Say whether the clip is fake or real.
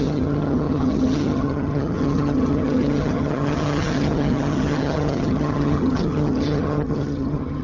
fake